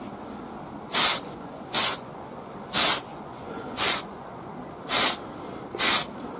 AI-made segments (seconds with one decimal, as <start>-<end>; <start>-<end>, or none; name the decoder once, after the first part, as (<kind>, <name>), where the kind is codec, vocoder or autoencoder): 1.1-2.5 (vocoder, Vocos); 3.1-4.8